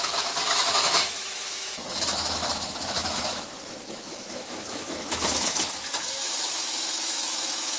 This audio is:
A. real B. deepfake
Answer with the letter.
B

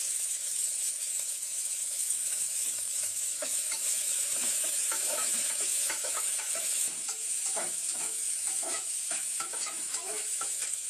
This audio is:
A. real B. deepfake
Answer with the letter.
B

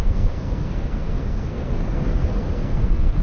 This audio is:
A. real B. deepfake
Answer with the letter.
B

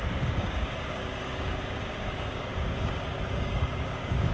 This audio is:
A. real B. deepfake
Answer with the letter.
B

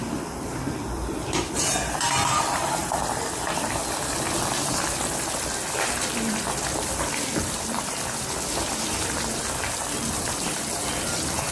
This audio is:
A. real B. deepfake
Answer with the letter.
B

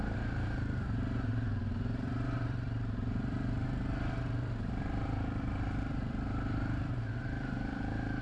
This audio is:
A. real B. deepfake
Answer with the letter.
B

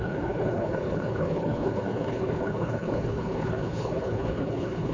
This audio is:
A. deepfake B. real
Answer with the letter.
A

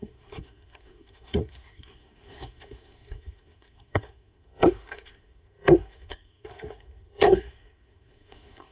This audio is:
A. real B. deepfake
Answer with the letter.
B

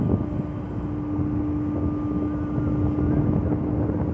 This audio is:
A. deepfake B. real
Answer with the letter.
B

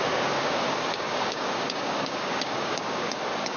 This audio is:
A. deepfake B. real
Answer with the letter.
A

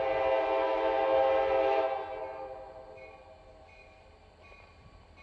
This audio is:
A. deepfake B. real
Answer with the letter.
B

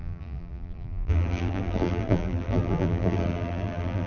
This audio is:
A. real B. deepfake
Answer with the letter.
B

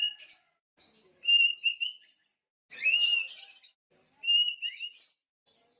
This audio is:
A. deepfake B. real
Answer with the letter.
B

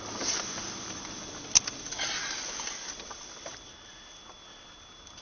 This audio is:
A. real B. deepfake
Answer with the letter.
A